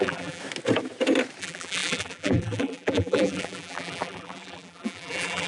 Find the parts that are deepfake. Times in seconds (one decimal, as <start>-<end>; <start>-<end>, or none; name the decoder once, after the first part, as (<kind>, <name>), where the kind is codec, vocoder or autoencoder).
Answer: 0.0-0.4 (vocoder, BigVGAN v2); 1.4-5.5